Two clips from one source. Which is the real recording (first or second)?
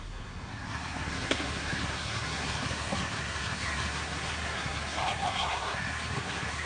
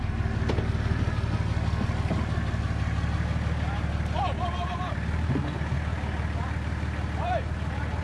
second